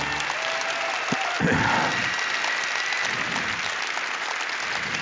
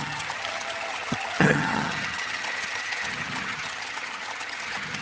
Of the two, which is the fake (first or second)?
second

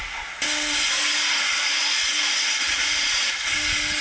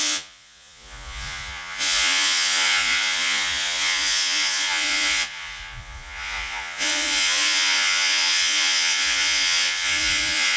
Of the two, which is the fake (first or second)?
second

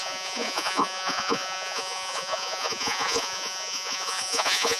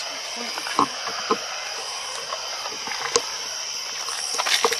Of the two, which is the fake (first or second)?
first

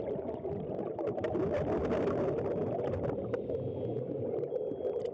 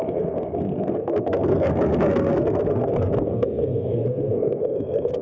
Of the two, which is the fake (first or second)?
second